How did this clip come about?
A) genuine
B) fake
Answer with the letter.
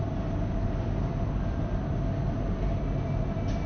A